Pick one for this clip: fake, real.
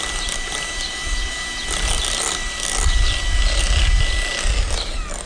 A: real